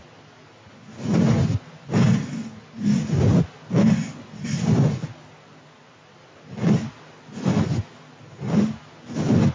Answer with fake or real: real